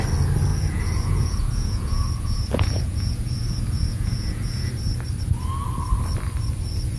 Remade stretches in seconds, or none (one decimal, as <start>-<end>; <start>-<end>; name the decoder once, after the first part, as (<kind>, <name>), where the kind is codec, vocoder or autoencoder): 0.5-4.7 (vocoder, Vocos)